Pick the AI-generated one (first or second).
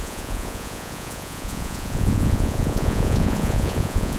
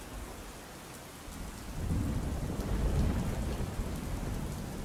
first